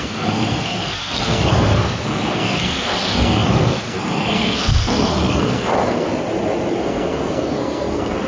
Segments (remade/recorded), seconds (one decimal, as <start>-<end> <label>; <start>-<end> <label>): 0.0-6.1 remade; 6.1-6.7 recorded; 6.7-8.3 remade